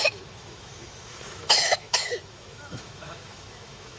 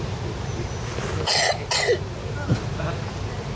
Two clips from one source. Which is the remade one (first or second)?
first